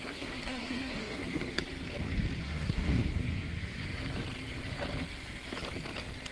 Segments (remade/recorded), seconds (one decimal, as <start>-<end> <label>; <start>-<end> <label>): 0.0-1.6 remade; 1.6-2.4 recorded; 2.4-3.6 remade; 3.6-6.3 recorded